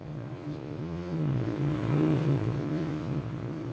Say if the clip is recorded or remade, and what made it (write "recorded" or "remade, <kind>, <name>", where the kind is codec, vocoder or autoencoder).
remade, vocoder, Vocos